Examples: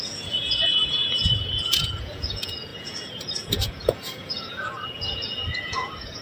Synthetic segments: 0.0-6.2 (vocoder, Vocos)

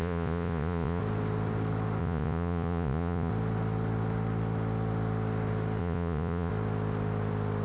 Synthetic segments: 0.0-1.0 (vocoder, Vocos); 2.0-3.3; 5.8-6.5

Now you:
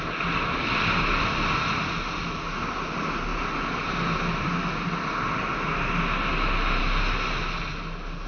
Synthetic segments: none

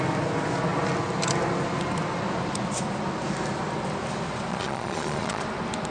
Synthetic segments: 4.5-5.4 (vocoder, Vocos)